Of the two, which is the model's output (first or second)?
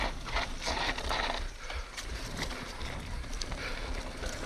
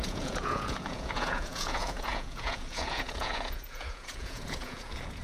second